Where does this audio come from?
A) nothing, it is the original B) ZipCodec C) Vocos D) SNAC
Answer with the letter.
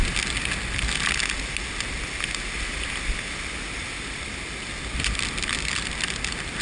A